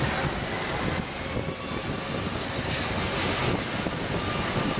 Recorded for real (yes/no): yes